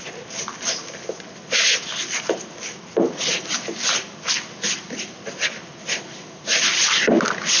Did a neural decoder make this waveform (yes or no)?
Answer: no